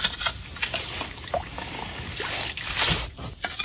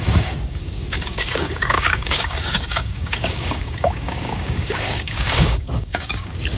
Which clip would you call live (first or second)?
first